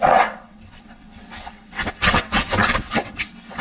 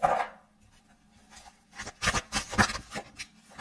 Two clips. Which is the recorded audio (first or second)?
second